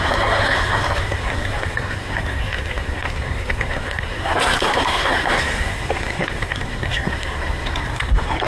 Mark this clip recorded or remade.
remade